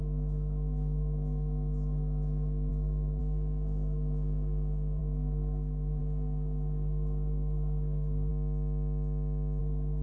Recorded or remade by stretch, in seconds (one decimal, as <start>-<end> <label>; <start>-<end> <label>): 0.0-8.3 remade; 8.3-9.6 recorded; 9.6-10.0 remade